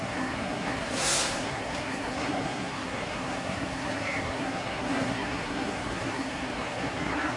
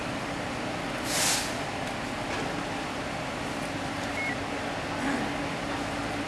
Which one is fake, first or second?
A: first